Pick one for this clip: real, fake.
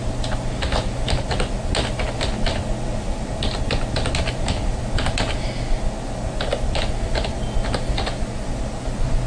real